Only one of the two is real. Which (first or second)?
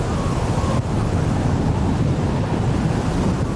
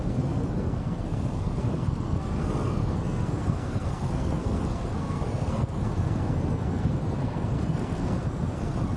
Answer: first